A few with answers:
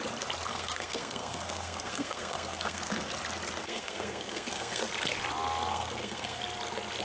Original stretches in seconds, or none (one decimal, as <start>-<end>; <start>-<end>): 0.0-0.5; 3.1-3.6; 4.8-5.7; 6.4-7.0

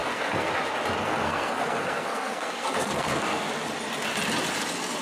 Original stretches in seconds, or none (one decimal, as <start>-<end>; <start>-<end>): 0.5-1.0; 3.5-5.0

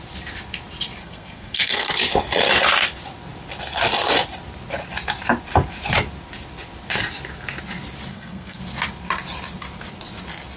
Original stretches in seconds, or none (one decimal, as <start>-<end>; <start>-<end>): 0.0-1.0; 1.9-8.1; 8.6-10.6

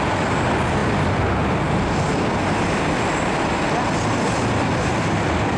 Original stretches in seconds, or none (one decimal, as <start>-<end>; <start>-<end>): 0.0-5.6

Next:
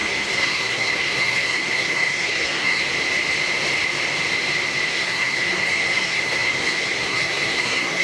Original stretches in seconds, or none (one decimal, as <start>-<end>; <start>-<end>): 2.8-4.9